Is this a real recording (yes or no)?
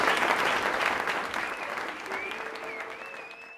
yes